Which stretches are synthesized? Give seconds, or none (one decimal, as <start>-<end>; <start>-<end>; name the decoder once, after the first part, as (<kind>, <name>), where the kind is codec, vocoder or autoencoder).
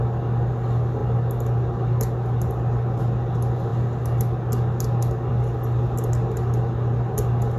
none